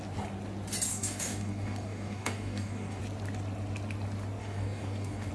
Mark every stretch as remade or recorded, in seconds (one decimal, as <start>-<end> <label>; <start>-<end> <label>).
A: 0.0-0.9 recorded; 0.9-3.0 remade; 3.0-4.4 recorded; 4.4-5.3 remade